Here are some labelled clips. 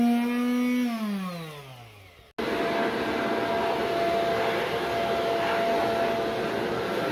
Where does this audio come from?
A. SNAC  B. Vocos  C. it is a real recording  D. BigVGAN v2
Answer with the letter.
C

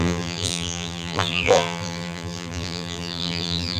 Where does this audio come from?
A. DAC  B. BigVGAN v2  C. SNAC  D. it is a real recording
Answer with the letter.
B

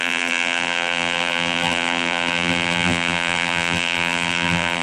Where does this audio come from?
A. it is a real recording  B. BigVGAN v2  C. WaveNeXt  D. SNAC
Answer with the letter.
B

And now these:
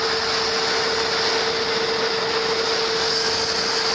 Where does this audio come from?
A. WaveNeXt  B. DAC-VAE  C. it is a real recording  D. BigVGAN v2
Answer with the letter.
C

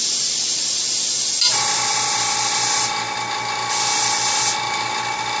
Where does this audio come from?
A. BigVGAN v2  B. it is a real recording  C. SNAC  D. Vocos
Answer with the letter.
B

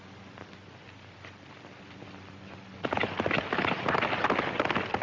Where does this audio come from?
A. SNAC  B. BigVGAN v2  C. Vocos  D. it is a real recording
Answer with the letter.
D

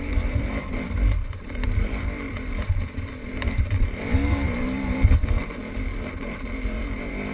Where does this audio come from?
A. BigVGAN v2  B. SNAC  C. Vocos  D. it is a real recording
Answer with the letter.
A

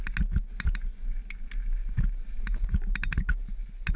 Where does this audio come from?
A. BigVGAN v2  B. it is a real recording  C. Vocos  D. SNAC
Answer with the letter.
B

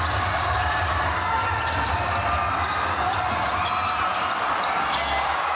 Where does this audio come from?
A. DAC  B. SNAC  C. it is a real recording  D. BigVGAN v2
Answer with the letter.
C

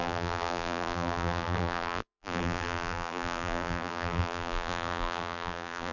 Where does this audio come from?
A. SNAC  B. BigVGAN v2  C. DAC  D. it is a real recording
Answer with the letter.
B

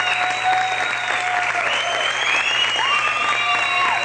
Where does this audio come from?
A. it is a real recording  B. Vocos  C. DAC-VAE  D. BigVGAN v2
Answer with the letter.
A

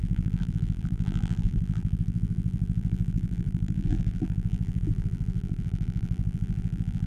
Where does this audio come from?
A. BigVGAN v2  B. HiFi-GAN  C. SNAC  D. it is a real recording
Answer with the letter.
A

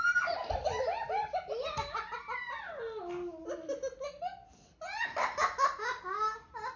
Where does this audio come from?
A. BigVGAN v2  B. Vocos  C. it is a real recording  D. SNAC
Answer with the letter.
C